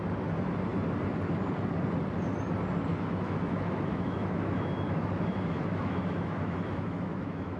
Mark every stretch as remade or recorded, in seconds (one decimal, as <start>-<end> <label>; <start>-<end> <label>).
0.0-2.9 recorded; 2.9-7.6 remade